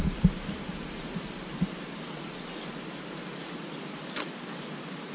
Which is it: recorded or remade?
recorded